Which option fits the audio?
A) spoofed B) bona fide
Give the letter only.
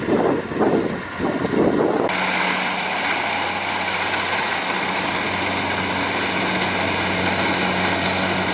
B